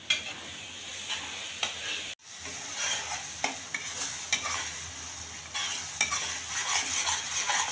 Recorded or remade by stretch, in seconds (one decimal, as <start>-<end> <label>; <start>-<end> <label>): 0.0-7.7 recorded